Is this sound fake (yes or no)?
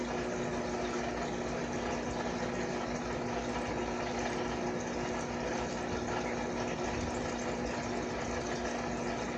no